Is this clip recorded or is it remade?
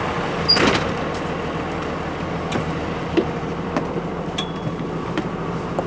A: recorded